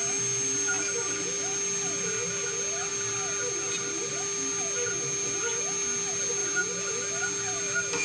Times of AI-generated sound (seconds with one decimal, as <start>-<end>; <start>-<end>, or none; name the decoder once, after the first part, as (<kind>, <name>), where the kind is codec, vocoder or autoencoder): none